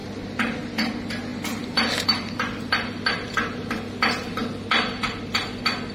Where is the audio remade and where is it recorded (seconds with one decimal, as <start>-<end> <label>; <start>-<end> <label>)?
0.0-5.9 recorded